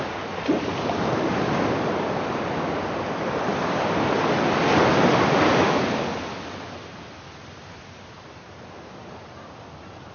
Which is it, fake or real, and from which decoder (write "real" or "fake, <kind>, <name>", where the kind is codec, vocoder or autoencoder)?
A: real